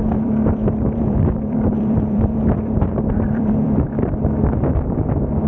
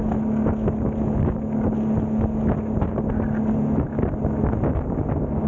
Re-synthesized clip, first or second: first